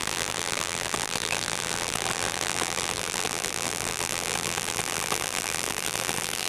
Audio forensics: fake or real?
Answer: fake